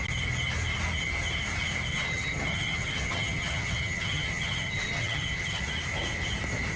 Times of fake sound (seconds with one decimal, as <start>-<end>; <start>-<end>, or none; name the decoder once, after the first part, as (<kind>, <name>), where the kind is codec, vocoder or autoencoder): 1.9-5.6 (vocoder, HiFi-GAN)